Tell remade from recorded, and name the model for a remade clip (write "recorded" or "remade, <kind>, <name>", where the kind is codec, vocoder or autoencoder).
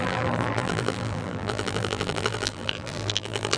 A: remade, vocoder, BigVGAN v2